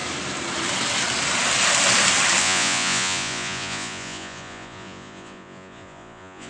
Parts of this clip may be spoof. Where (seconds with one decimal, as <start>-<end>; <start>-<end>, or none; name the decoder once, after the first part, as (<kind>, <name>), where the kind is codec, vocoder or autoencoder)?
2.4-6.5 (vocoder, Vocos)